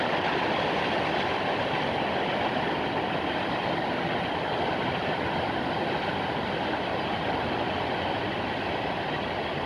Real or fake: real